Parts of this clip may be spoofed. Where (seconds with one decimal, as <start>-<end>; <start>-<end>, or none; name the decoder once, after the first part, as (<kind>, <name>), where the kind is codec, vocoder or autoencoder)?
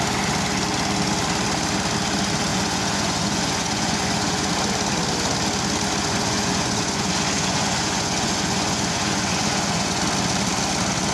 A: 2.5-4.5 (vocoder, Vocos); 6.0-10.0